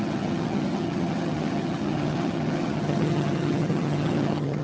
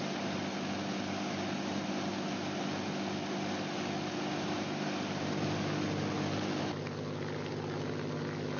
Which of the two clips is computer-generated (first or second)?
first